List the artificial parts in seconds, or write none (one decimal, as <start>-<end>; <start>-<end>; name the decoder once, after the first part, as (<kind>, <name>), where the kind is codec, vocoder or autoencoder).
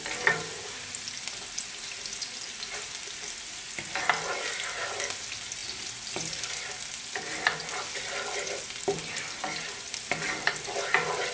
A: none